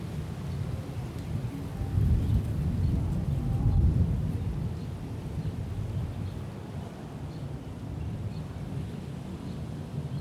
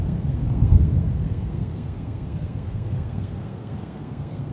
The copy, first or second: second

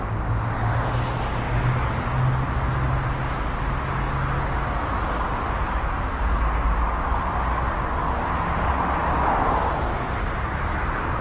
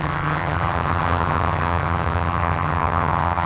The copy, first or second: second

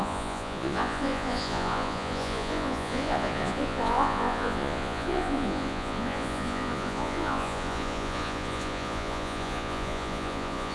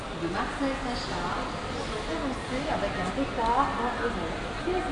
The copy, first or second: first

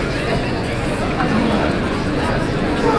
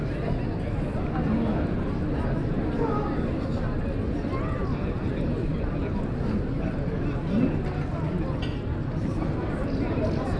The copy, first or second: first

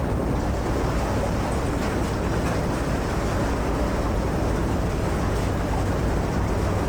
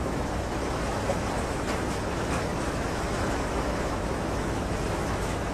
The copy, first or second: second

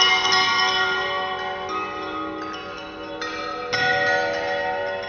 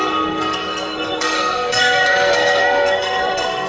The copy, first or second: second